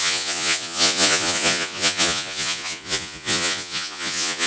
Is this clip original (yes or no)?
no